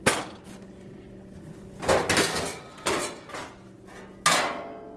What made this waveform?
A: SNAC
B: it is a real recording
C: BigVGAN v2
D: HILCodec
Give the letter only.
B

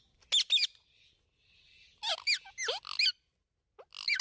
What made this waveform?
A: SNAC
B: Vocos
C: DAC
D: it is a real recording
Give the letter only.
D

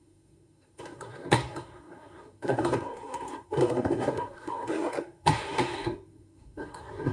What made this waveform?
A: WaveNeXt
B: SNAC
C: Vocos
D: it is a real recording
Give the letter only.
B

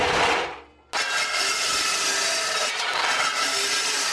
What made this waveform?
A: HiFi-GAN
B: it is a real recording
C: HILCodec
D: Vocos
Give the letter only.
B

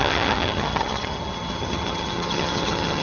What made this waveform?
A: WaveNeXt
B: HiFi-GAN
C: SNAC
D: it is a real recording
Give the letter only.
B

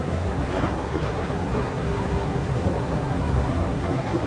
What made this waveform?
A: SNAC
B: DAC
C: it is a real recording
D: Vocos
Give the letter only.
A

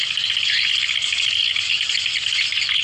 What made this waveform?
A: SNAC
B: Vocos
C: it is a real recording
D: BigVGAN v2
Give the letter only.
C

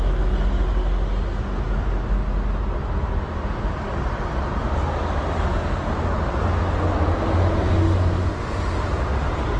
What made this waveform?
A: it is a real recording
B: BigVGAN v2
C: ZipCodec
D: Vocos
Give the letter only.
A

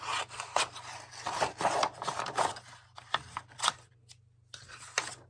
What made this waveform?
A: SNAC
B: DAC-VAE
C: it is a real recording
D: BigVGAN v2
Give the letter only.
C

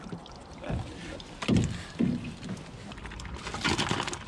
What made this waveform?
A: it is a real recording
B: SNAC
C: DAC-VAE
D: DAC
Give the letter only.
A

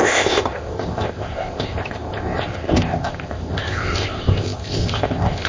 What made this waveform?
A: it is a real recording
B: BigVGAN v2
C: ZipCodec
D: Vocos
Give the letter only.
C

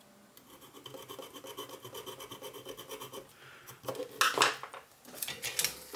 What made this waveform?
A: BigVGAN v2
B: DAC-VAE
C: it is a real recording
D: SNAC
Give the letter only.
C